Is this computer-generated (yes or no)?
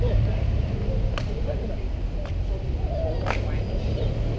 yes